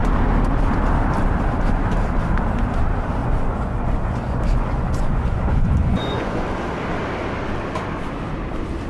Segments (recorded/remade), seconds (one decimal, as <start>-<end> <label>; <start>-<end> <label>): 0.0-3.2 recorded; 3.2-6.4 remade; 6.4-8.9 recorded